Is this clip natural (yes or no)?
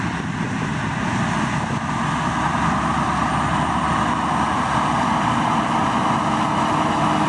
yes